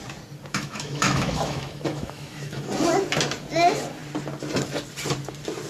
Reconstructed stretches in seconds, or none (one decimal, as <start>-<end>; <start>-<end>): 0.5-2.7